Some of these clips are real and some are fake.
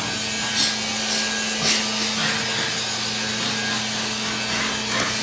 real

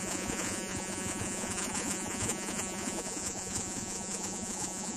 fake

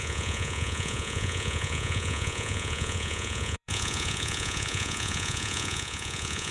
fake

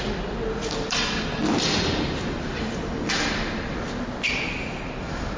real